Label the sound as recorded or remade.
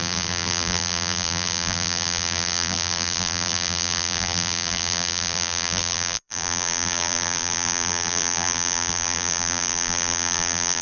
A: remade